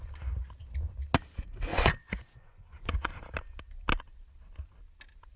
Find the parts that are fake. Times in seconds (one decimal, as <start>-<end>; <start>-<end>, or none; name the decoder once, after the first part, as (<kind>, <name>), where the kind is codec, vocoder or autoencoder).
1.7-3.1 (vocoder, Vocos)